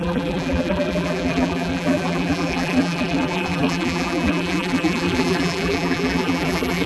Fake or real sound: fake